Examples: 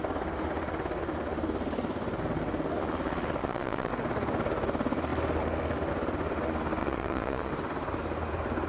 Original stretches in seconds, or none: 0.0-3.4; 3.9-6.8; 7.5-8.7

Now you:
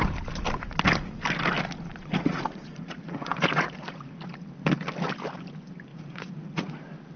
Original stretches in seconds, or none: 0.0-1.9; 4.2-5.9; 6.8-7.2

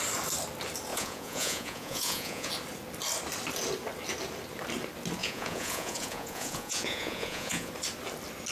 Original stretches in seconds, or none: 0.0-0.9; 2.5-5.2; 7.7-8.5

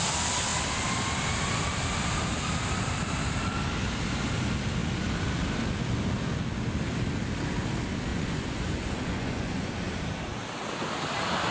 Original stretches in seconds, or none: 0.0-8.1; 9.7-11.5